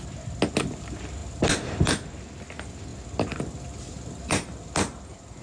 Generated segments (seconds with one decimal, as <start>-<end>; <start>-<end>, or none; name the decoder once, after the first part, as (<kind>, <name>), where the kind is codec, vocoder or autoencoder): 2.9-4.6 (vocoder, BigVGAN v2)

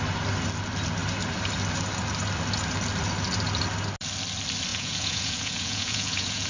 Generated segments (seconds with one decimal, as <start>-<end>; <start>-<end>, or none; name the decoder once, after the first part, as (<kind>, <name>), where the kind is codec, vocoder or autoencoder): 4.7-6.5 (vocoder, Vocos)

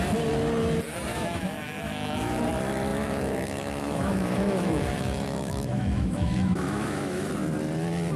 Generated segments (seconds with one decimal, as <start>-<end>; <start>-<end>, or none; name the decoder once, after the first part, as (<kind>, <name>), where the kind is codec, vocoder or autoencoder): 1.1-2.4 (autoencoder, DAC-VAE); 2.9-7.3

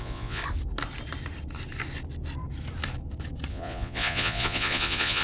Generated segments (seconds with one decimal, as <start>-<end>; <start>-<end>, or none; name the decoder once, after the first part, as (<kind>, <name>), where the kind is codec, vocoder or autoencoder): 0.0-0.4 (vocoder, Vocos); 3.5-5.2

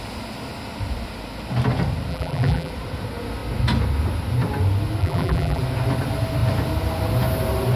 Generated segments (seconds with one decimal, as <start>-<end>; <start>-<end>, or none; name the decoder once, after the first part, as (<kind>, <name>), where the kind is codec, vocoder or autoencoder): 2.1-2.7 (vocoder, BigVGAN v2); 5.0-5.6

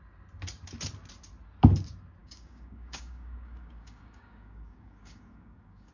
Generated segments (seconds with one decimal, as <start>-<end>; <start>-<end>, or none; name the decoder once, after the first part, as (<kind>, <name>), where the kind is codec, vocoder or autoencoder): 2.2-5.9 (codec, DAC)